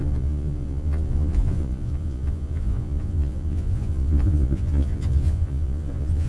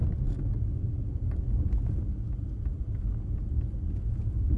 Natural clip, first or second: second